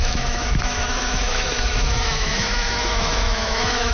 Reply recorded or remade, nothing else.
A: remade